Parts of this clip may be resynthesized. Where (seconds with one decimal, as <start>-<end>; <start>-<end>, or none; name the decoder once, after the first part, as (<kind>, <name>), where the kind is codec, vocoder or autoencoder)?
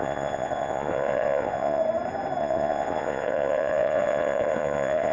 0.0-1.8 (vocoder, Vocos); 2.4-5.1